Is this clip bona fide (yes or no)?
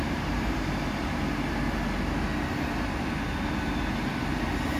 yes